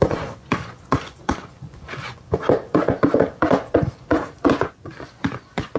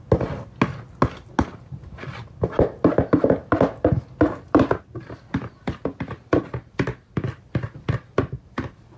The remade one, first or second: first